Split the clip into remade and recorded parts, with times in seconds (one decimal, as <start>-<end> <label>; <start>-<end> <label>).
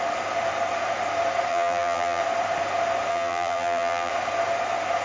0.0-1.5 recorded; 1.5-2.2 remade; 2.2-3.1 recorded; 3.1-4.1 remade; 4.1-5.0 recorded